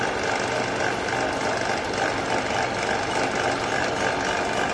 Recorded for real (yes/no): yes